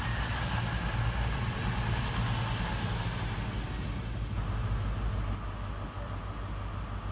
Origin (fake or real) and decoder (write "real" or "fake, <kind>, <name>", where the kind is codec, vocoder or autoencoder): real